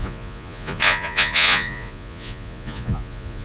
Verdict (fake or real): fake